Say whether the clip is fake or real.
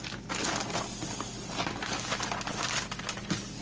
real